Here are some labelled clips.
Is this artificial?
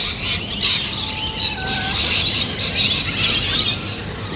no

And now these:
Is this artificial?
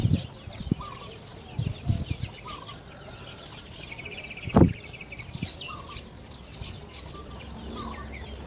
no